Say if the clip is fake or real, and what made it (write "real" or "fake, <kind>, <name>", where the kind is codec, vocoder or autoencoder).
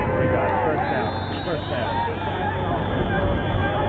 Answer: real